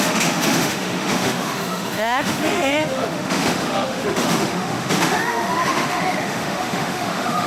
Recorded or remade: remade